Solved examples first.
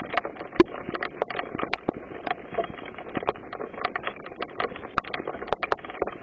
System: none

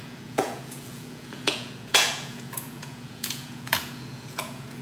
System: vocoder, Vocos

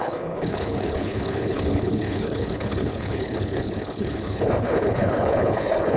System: codec, HILCodec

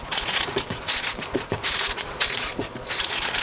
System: vocoder, Vocos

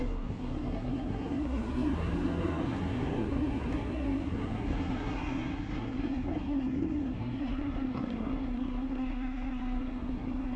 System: codec, SNAC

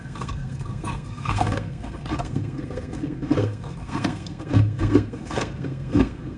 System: codec, SNAC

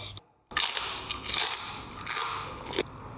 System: none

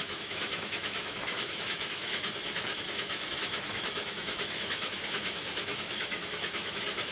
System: autoencoder, DAC-VAE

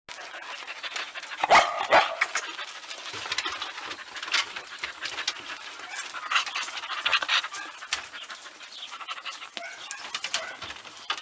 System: none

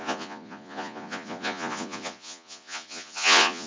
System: vocoder, Vocos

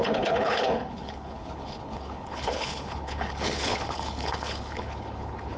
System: codec, HILCodec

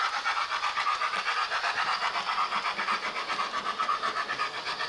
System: none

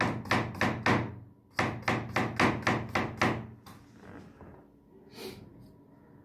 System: none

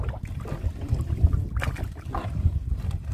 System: none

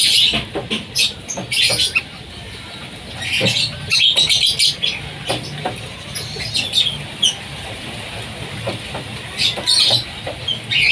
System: none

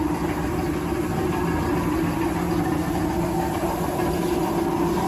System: none